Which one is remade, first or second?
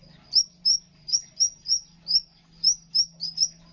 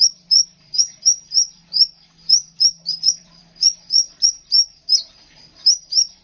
second